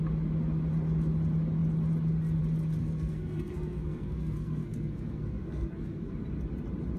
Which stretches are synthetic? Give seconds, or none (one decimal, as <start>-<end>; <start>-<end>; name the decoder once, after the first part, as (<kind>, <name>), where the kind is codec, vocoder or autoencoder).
2.8-6.1 (codec, SNAC)